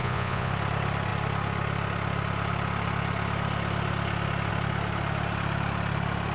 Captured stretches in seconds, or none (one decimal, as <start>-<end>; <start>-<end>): 0.5-6.3